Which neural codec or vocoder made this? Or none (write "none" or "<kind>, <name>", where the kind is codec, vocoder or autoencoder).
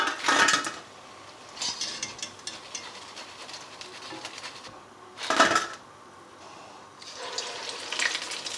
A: none